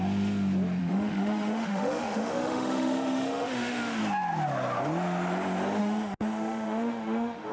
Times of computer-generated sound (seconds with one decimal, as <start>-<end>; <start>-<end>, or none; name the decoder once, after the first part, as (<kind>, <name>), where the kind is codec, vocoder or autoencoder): 0.8-4.0 (autoencoder, DAC-VAE); 5.8-7.5